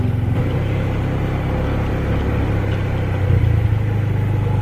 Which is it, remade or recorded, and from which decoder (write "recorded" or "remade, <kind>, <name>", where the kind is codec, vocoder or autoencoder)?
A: recorded